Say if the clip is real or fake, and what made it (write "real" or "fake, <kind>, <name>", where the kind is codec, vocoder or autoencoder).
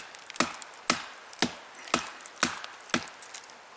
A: real